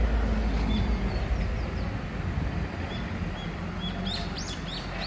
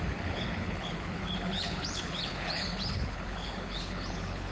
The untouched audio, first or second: first